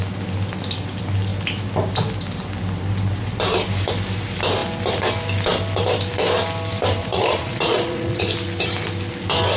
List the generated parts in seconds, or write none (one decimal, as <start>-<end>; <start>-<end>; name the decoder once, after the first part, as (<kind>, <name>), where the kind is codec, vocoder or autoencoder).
7.0-8.2 (vocoder, Vocos)